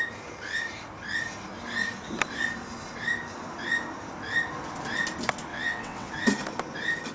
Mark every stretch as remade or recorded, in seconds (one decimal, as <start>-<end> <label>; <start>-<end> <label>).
0.0-5.5 recorded; 5.5-6.1 remade; 6.1-7.1 recorded